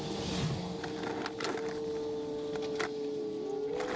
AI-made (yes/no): no